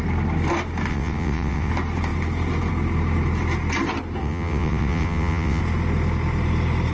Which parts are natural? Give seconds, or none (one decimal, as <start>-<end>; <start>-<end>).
0.0-0.9; 1.7-4.2; 5.6-6.9